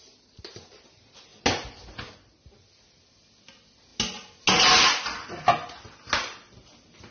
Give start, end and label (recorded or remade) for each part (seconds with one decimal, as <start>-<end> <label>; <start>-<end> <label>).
0.0-7.1 recorded